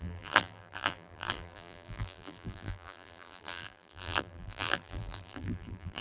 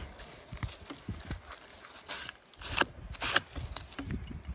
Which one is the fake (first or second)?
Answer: first